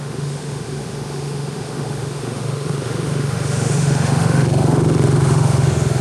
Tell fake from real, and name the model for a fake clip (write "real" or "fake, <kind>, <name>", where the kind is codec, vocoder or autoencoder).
fake, autoencoder, DAC-VAE